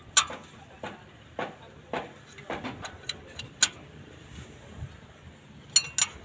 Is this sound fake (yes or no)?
no